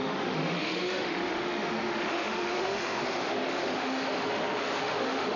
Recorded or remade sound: remade